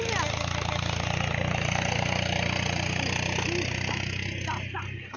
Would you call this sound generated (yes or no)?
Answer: no